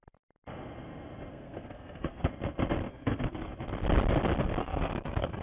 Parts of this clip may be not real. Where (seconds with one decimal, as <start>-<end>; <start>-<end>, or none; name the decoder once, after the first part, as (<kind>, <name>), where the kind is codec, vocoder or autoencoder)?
1.3-2.3 (codec, SNAC); 2.9-3.5; 4.6-5.4